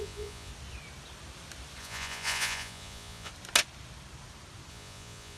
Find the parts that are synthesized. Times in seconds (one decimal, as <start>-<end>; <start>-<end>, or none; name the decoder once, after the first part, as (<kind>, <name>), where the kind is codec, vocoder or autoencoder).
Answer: 0.0-0.5 (vocoder, Vocos); 1.8-3.3; 4.7-5.4